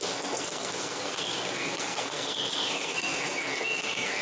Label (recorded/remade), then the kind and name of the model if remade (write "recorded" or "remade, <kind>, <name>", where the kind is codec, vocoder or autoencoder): remade, codec, SNAC